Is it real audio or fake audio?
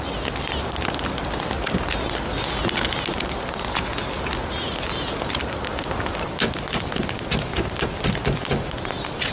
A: real